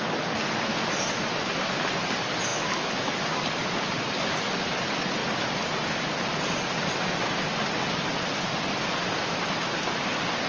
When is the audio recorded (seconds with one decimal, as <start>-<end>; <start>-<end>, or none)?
0.0-2.5; 3.1-10.5